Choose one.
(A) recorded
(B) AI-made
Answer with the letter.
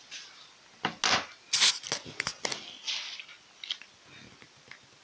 A